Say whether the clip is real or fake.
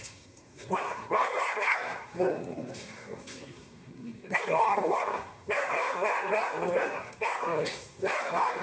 fake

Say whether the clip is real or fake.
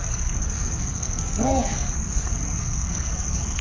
fake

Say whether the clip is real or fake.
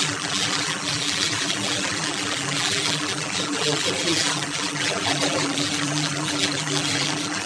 fake